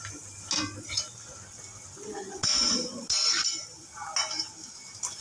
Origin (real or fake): real